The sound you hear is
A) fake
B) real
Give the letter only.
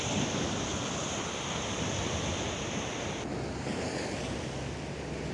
B